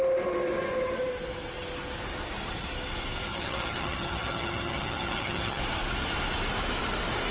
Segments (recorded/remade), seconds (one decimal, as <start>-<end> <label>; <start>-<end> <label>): 0.0-3.3 recorded; 3.3-5.6 remade; 5.6-7.3 recorded